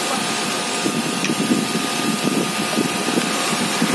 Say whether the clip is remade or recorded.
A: recorded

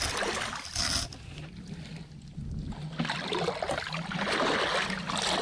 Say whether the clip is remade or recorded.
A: recorded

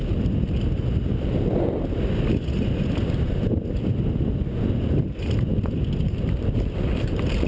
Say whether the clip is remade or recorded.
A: recorded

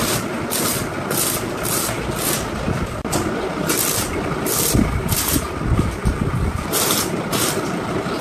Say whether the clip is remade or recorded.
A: recorded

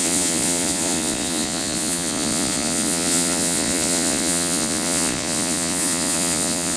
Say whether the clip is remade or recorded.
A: remade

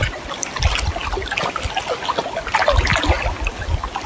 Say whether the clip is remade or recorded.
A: recorded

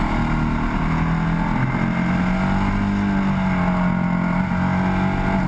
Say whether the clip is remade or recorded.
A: recorded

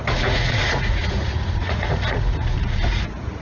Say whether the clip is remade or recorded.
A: remade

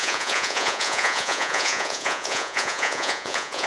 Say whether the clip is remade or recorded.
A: remade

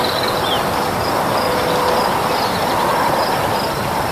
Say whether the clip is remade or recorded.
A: recorded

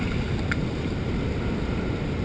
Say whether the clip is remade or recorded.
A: recorded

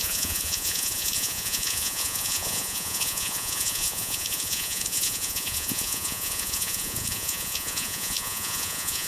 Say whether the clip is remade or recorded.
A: remade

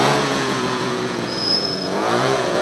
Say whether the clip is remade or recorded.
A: remade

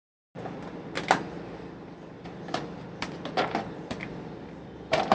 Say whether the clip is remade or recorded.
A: recorded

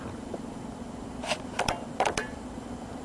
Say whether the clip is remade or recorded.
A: recorded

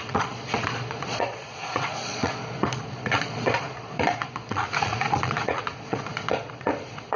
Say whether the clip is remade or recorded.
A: remade